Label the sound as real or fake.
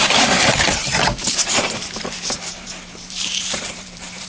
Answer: fake